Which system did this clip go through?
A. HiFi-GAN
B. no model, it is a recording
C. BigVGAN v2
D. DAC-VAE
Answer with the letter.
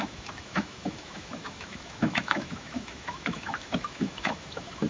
D